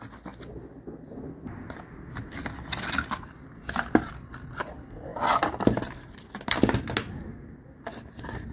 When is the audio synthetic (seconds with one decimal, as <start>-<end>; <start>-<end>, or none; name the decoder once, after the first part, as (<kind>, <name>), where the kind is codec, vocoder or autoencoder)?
none